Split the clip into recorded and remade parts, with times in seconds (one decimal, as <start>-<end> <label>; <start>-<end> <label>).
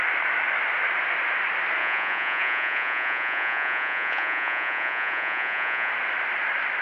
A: 0.0-1.8 recorded; 1.8-5.9 remade; 5.9-6.8 recorded